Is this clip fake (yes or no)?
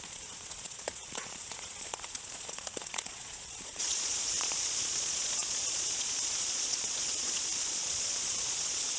yes